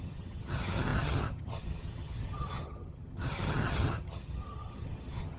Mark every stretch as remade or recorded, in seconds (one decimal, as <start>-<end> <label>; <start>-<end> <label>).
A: 0.0-5.4 remade